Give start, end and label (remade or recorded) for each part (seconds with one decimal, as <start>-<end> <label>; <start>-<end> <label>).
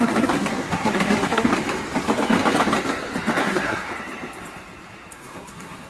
0.0-1.5 remade; 1.5-3.4 recorded; 3.4-3.9 remade; 3.9-5.1 recorded; 5.1-5.9 remade